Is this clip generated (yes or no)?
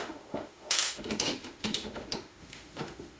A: yes